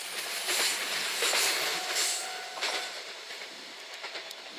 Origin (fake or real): fake